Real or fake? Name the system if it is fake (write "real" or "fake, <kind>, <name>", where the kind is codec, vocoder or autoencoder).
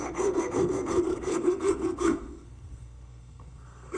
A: fake, codec, SNAC